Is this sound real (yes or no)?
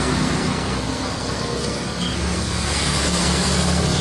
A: no